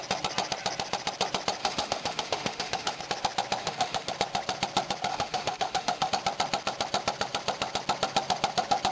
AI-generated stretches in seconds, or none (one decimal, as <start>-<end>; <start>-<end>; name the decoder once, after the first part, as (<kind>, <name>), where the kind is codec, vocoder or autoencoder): 1.6-3.0 (autoencoder, DAC-VAE); 3.6-4.1; 5.1-6.1